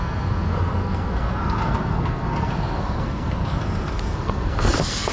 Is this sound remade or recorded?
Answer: remade